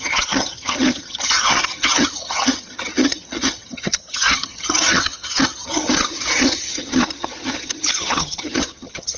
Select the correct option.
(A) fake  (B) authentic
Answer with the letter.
A